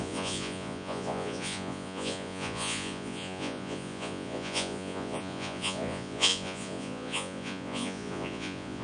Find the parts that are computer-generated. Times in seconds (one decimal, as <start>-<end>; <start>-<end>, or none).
0.0-8.8